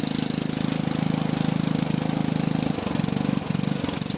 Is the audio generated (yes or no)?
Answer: no